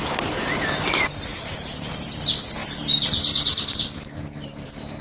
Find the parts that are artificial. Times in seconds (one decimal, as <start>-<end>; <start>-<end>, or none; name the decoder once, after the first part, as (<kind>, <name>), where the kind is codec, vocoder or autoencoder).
1.3-2.2 (vocoder, BigVGAN v2); 2.6-5.0